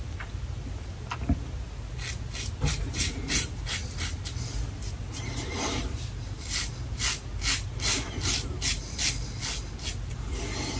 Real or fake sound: real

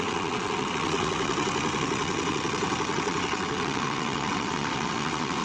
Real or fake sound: fake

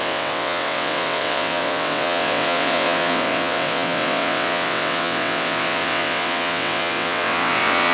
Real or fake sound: fake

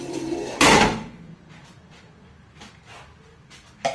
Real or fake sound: real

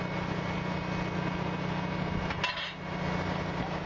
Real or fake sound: real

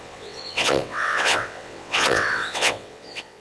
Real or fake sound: fake